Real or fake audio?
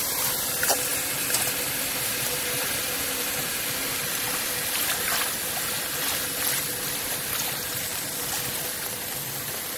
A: real